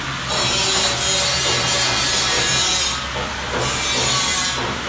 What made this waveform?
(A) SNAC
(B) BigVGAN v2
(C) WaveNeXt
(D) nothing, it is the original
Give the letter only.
D